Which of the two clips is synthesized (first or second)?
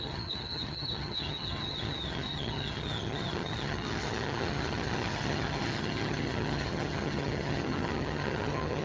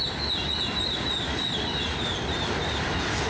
first